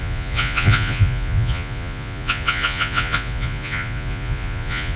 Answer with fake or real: fake